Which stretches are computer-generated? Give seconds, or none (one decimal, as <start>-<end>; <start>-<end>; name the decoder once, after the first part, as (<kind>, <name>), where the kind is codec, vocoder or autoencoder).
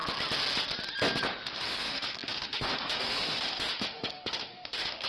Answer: 1.5-5.1 (autoencoder, DAC-VAE)